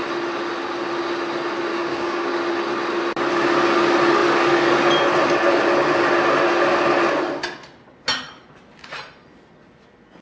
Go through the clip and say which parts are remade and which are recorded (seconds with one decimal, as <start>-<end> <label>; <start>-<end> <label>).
0.0-1.7 recorded; 1.7-2.3 remade; 2.3-10.2 recorded